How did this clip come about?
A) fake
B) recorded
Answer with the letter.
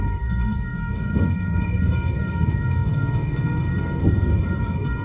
A